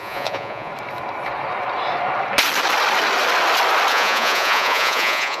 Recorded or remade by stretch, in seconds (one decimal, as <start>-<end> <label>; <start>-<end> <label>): 0.0-0.7 remade; 0.7-3.9 recorded; 3.9-5.4 remade